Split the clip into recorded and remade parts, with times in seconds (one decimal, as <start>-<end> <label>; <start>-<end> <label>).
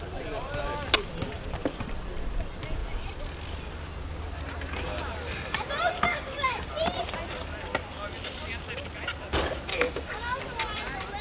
0.0-6.1 recorded; 6.1-6.7 remade; 6.7-9.7 recorded; 9.7-10.4 remade; 10.4-11.2 recorded